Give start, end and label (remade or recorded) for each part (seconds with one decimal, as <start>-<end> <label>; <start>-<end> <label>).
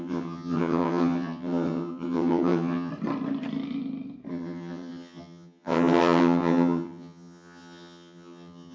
0.0-2.9 remade; 2.9-4.3 recorded; 4.3-8.7 remade